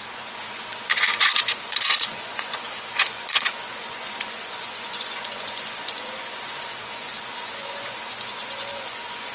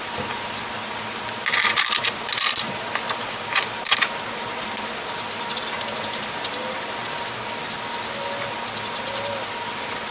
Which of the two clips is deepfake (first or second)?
first